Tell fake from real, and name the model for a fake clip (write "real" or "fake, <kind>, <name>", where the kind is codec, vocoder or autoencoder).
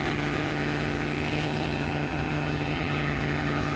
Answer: fake, vocoder, HiFi-GAN